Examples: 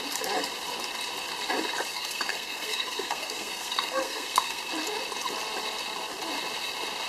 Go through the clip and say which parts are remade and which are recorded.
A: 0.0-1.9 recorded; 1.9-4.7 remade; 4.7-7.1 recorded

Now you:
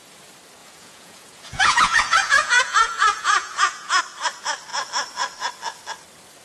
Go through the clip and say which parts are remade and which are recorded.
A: 0.0-0.6 recorded; 0.6-4.0 remade; 4.0-6.4 recorded

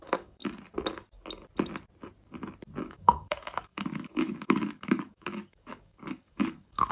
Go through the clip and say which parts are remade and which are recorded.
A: 0.0-0.4 remade; 0.4-2.8 recorded; 2.8-6.9 remade

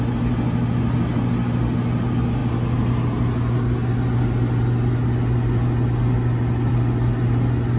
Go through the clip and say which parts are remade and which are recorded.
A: 0.0-7.8 recorded

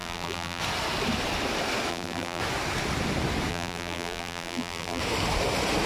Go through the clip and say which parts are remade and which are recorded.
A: 0.0-0.6 remade; 0.6-1.9 recorded; 1.9-2.4 remade; 2.4-3.5 recorded; 3.5-5.0 remade; 5.0-5.9 recorded

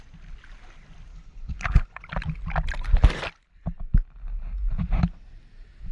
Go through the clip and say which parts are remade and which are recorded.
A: 0.0-1.1 recorded; 1.1-2.0 remade; 2.0-5.9 recorded